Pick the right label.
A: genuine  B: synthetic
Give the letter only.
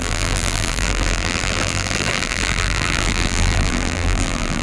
B